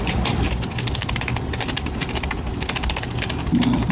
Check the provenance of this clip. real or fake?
real